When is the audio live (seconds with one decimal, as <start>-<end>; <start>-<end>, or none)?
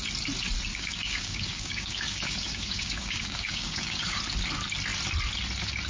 0.0-0.7; 4.2-5.9